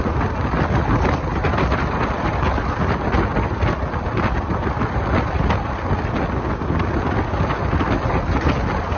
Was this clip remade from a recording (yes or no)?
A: no